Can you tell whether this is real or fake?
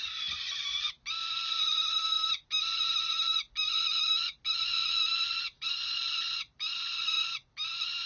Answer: fake